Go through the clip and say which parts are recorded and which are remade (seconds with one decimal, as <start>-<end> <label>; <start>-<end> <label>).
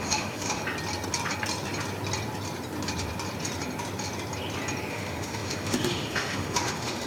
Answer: 0.0-0.6 remade; 0.6-4.9 recorded; 4.9-7.1 remade